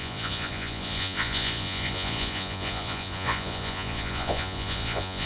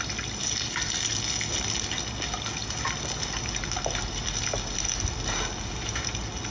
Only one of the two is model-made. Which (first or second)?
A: first